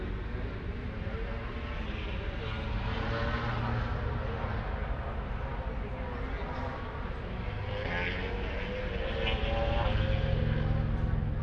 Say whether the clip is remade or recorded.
recorded